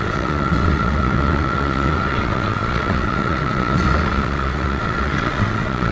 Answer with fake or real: fake